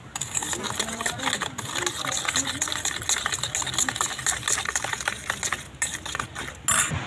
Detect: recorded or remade recorded